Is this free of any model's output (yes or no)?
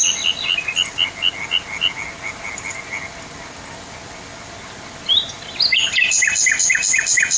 yes